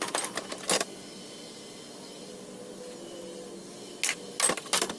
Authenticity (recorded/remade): recorded